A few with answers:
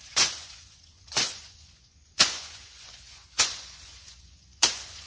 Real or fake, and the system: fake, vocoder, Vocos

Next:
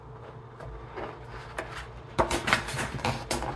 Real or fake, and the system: real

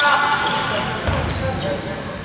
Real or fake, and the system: real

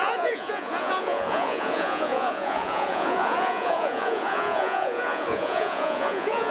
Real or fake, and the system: fake, vocoder, Vocos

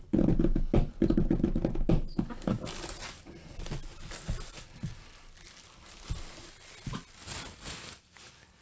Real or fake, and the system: real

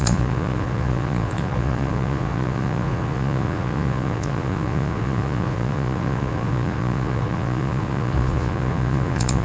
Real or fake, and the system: fake, vocoder, Vocos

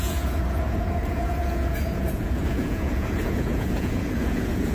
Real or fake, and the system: fake, vocoder, Vocos